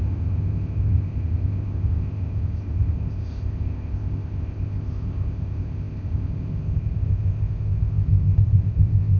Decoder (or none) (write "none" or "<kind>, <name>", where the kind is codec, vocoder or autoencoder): codec, ZipCodec